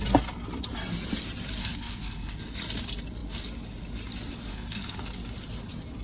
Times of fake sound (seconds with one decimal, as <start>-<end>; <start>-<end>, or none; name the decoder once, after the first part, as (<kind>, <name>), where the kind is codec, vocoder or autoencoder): 1.6-2.4 (codec, SNAC); 4.5-5.0